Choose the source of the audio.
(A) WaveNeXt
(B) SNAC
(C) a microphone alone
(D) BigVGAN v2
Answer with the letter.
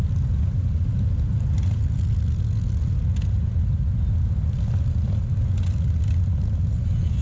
C